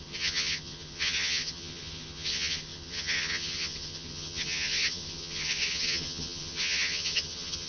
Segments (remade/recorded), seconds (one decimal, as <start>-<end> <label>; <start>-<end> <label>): 0.0-7.7 remade